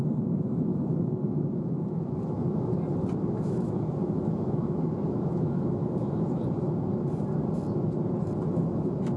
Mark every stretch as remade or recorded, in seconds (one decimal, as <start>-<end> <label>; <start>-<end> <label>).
0.0-2.7 remade; 2.7-3.3 recorded; 3.3-6.4 remade; 6.4-8.5 recorded; 8.5-9.2 remade